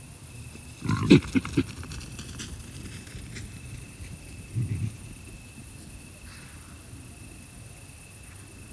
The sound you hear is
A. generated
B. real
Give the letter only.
B